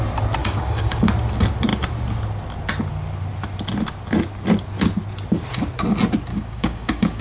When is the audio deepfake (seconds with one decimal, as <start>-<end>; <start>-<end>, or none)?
0.4-1.1; 6.3-7.2